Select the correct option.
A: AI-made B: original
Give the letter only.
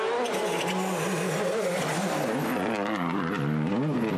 B